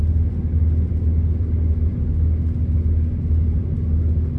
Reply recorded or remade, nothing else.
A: recorded